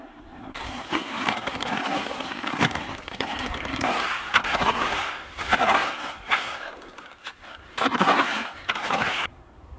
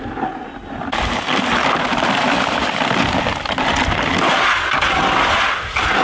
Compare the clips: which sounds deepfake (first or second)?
first